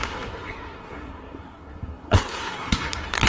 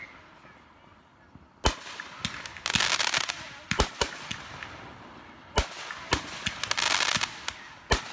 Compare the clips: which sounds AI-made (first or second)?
first